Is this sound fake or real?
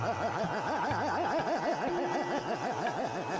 real